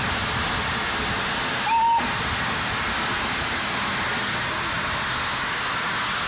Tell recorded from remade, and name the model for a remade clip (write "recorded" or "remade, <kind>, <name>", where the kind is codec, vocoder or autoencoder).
recorded